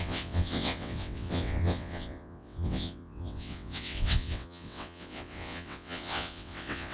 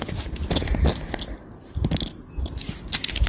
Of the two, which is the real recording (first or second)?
second